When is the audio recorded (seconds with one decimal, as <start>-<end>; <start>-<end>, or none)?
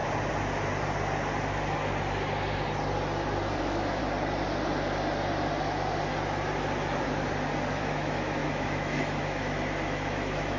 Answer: 0.0-3.6; 4.0-7.7